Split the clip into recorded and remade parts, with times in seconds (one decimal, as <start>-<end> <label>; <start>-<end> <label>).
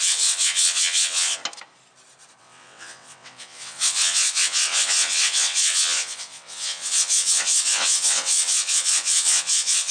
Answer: 0.0-1.4 remade; 1.4-2.4 recorded; 2.4-9.9 remade